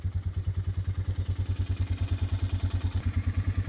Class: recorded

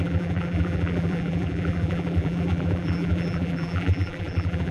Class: remade